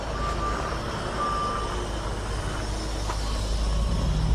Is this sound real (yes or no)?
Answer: yes